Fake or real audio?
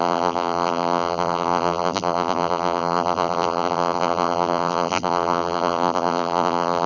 fake